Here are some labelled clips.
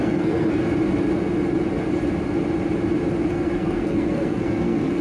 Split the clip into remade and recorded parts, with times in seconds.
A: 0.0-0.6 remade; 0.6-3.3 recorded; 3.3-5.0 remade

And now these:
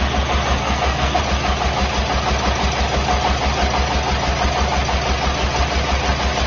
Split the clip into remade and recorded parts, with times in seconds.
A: 0.0-0.6 recorded; 0.6-1.2 remade; 1.2-6.5 recorded